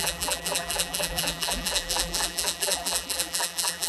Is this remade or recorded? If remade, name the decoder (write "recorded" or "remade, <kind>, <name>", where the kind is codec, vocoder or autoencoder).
remade, vocoder, BigVGAN v2